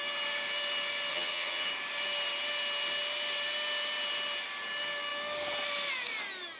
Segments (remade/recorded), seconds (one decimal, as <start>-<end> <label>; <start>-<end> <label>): 0.0-1.1 recorded; 1.1-1.7 remade; 1.7-6.6 recorded